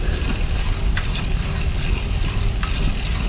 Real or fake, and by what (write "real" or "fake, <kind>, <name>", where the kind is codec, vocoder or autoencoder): real